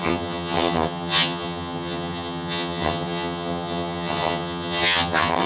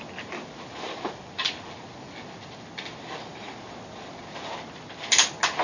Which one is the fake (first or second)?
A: first